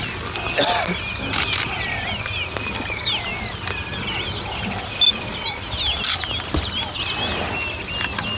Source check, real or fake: real